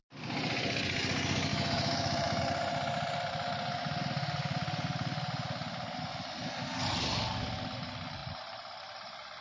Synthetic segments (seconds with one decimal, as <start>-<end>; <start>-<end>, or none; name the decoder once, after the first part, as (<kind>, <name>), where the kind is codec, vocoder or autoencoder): 1.5-2.4 (autoencoder, DAC-VAE)